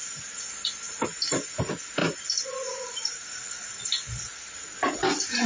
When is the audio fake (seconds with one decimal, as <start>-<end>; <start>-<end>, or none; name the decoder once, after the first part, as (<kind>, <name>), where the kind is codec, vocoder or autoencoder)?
2.0-3.3 (vocoder, BigVGAN v2)